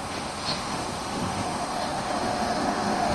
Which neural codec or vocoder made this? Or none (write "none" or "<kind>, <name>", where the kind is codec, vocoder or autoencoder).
autoencoder, DAC-VAE